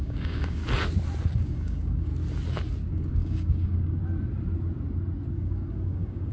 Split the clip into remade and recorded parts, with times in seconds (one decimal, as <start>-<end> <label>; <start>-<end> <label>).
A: 0.0-0.6 remade; 0.6-1.4 recorded; 1.4-2.1 remade; 2.1-2.9 recorded; 2.9-4.0 remade; 4.0-5.3 recorded; 5.3-6.3 remade